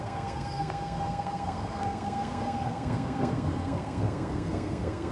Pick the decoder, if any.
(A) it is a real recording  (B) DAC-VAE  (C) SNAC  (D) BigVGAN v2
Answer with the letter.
C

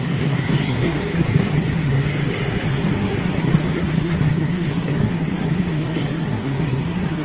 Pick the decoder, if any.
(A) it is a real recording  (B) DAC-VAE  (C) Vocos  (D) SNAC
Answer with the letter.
D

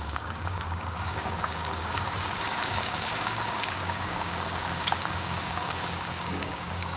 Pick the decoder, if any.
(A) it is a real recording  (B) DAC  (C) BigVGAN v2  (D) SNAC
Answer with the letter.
B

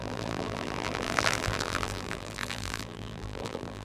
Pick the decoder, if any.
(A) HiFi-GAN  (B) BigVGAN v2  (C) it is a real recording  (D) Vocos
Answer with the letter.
B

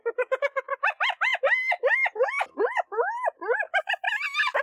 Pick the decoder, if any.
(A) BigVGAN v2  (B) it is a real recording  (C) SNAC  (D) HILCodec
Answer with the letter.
B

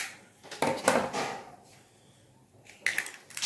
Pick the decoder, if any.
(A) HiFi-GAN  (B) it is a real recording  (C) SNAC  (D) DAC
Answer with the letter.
B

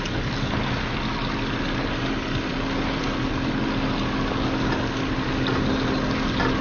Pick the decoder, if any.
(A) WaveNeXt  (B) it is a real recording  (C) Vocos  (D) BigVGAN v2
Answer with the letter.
B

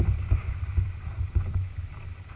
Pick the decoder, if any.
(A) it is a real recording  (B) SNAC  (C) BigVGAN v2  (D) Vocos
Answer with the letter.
C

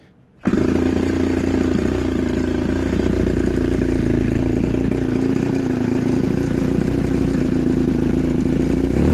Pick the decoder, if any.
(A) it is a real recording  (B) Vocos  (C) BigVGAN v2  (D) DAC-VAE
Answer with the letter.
A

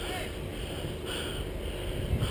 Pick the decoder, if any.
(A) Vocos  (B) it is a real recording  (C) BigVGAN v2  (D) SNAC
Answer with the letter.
B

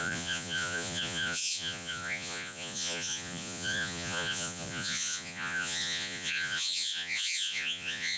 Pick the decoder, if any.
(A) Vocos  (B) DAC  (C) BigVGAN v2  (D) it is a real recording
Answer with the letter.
A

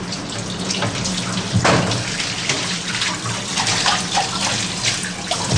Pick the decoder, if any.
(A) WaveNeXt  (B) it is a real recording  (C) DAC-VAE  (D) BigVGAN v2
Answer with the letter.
B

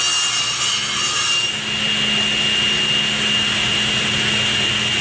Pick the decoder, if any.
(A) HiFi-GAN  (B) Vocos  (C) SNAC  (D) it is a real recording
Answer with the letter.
D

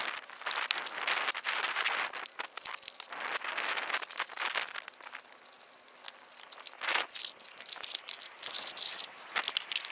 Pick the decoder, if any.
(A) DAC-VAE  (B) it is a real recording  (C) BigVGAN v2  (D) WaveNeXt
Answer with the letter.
B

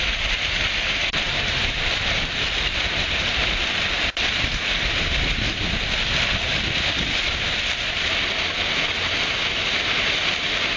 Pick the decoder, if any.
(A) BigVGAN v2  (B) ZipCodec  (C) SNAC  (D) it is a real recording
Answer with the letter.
D